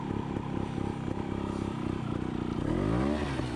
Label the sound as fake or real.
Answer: real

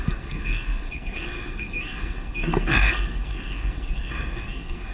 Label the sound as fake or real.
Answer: fake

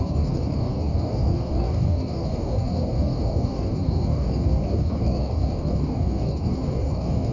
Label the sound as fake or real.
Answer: fake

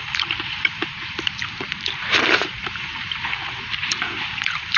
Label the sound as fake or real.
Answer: fake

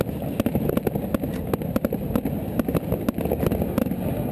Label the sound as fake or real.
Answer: real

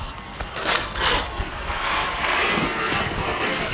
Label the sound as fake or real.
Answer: fake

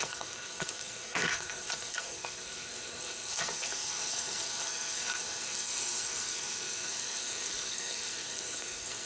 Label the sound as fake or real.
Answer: fake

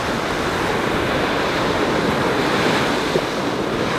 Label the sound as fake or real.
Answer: real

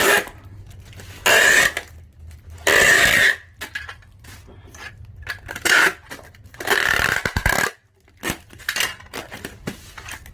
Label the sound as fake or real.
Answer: real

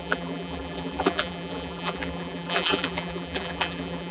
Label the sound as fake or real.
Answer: fake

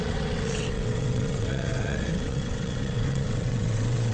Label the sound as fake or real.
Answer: fake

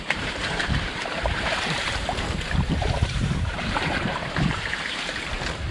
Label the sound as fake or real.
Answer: fake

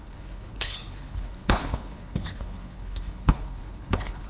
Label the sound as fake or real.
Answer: fake